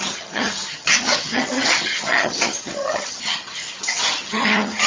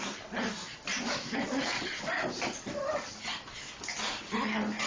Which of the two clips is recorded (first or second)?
second